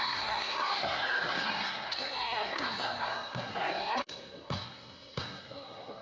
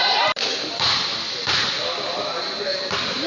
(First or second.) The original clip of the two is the second